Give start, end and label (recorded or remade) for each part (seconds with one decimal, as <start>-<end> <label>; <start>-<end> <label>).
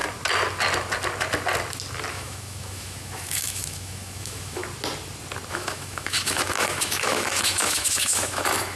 0.0-2.1 recorded; 2.1-4.6 remade; 4.6-5.5 recorded; 5.5-8.8 remade